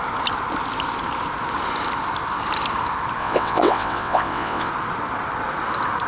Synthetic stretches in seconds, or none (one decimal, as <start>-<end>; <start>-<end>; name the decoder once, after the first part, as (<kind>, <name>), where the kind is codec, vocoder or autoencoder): 3.2-4.7 (vocoder, WaveNeXt)